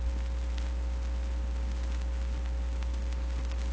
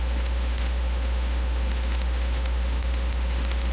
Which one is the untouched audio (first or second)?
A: first